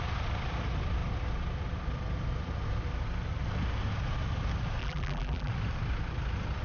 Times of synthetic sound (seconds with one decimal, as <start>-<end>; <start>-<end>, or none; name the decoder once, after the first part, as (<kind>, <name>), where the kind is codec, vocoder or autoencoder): 4.8-5.5 (vocoder, BigVGAN v2)